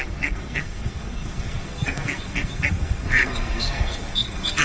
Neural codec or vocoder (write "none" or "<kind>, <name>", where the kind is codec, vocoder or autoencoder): codec, SNAC